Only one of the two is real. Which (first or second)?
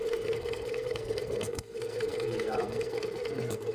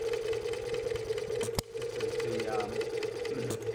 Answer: second